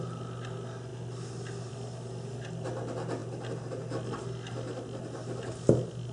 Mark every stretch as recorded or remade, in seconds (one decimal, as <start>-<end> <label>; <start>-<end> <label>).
0.0-6.1 recorded